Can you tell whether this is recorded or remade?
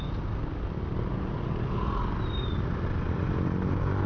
recorded